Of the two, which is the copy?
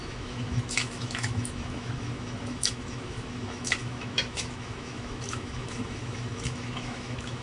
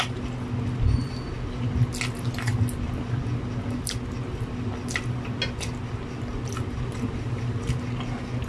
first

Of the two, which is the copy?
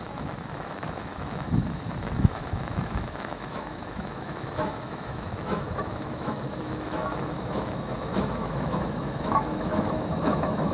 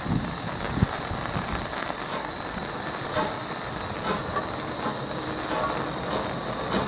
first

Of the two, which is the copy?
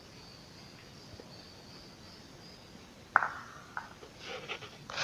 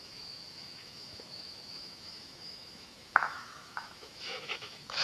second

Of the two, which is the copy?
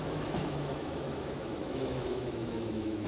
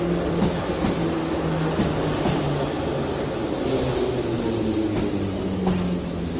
first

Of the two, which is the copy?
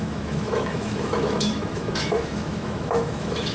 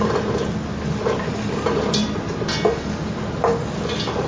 first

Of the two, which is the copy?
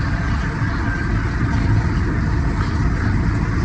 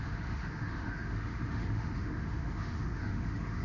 second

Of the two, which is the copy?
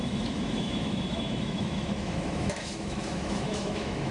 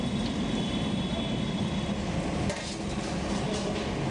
first